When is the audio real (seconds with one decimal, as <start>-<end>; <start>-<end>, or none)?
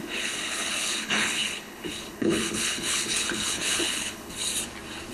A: 4.5-5.1